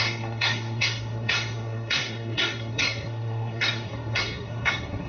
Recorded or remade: remade